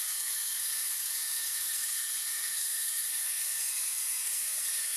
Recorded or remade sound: remade